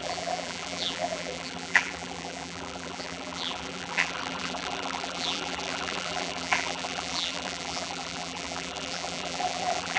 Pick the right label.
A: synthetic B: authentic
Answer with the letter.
A